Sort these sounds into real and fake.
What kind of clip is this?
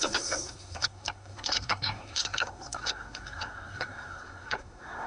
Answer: fake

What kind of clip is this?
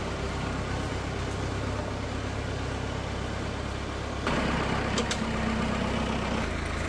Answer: real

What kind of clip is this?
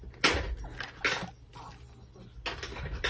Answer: real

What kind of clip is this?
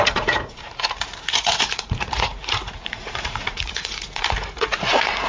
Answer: fake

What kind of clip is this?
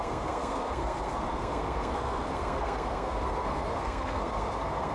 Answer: fake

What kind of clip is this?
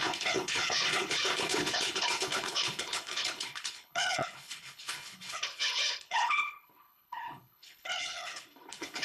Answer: fake